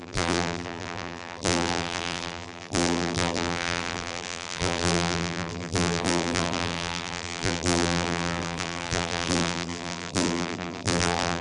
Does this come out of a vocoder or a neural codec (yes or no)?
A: yes